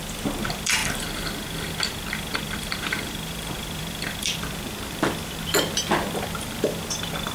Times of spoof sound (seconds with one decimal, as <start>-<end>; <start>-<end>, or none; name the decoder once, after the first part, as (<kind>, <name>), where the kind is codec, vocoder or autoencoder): 0.0-0.8 (vocoder, BigVGAN v2); 2.1-7.3